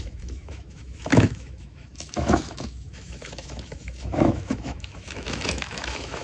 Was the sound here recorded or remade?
remade